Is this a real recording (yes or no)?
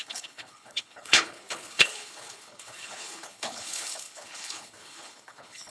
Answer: no